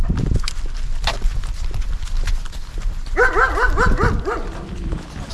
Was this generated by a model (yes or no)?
no